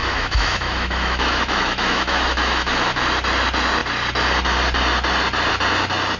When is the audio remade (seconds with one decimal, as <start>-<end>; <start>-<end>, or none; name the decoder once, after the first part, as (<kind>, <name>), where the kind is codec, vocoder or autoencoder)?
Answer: 0.0-3.0 (autoencoder, DAC-VAE)